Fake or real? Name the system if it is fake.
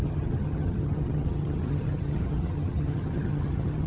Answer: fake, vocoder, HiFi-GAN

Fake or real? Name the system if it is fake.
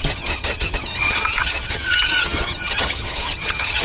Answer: fake, vocoder, HiFi-GAN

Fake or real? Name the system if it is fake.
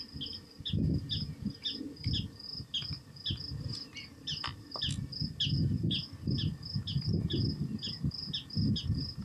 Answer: real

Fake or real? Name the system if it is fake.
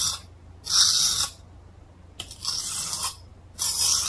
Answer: real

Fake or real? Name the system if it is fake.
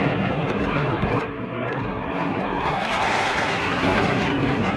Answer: fake, codec, SNAC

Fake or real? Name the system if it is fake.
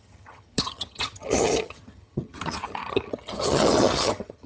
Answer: fake, vocoder, HiFi-GAN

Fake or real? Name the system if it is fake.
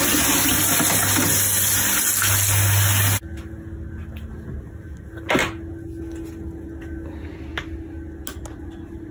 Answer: real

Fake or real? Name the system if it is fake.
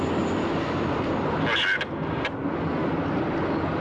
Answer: real